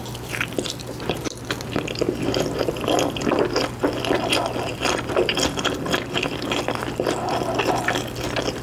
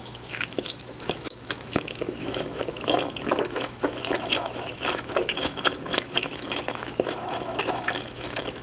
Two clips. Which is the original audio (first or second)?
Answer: first